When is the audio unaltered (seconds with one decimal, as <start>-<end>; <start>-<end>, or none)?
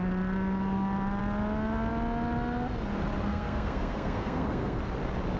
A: 0.0-3.3; 4.8-5.4